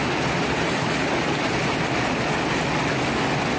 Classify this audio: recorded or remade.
recorded